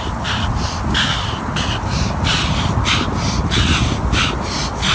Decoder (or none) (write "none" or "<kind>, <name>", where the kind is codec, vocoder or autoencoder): none